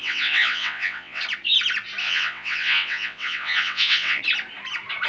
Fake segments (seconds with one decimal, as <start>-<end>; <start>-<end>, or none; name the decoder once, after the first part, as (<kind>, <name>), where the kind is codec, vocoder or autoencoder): 0.0-1.2 (vocoder, WaveNeXt); 2.0-4.2